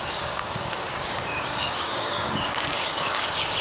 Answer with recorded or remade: remade